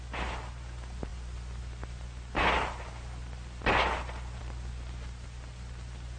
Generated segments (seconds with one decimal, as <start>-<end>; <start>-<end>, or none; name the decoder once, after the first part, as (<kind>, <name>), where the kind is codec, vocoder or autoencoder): none